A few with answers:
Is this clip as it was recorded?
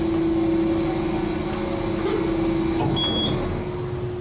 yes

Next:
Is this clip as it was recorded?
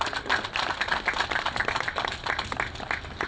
yes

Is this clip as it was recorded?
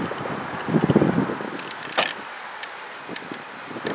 yes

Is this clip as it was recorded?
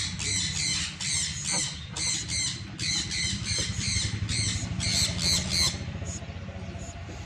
no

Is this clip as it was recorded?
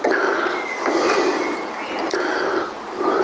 yes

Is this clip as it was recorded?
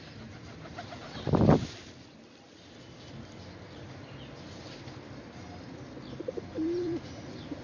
yes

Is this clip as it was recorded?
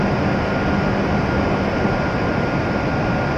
yes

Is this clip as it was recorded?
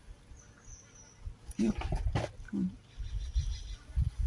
yes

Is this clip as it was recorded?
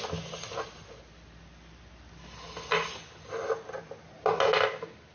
yes